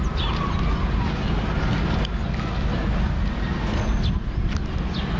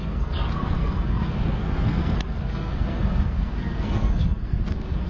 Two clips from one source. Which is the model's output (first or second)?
second